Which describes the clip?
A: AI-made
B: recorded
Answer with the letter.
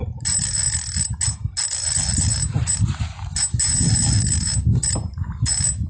B